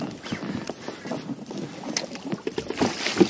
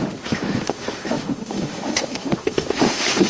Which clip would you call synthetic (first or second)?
second